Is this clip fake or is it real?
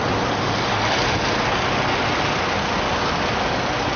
real